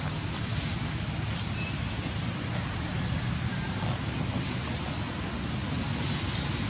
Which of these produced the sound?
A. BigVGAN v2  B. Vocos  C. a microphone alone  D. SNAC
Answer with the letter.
C